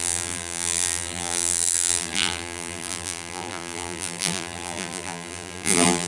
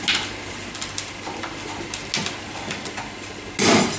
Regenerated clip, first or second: first